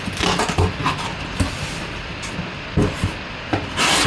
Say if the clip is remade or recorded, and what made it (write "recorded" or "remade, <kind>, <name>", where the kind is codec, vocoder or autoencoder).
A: recorded